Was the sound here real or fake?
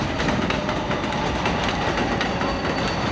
real